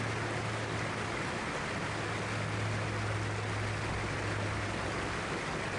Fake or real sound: real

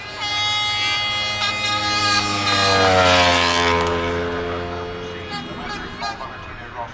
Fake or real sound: real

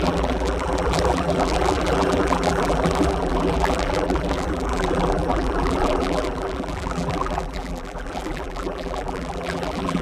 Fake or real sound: fake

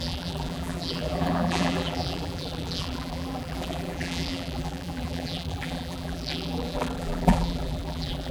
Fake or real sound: fake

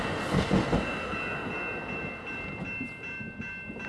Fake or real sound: real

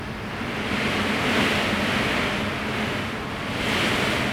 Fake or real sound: real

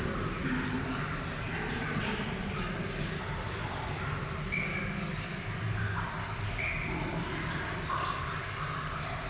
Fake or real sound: real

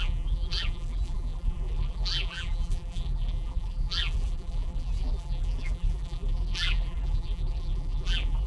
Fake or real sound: fake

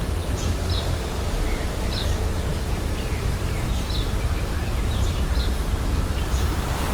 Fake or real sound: fake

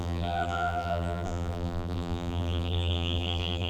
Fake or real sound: fake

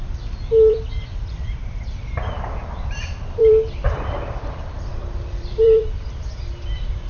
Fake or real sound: fake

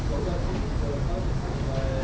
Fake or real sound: real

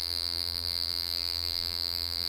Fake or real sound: fake